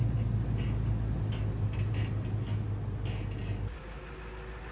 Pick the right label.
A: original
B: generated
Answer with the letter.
A